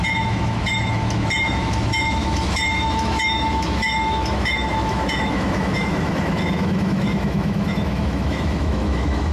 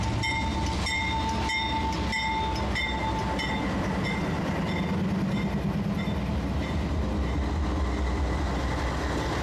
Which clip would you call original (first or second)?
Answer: second